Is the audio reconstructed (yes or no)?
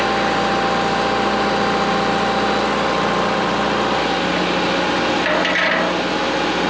no